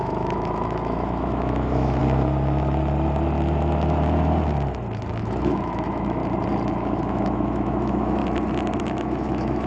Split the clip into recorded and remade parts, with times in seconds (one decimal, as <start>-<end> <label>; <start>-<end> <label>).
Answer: 0.0-2.0 remade; 2.0-5.2 recorded; 5.2-6.2 remade; 6.2-6.7 recorded; 6.7-8.2 remade; 8.2-8.8 recorded; 8.8-9.7 remade